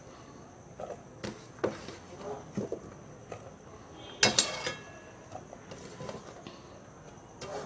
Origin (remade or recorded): recorded